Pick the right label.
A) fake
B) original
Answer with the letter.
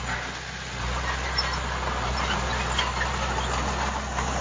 B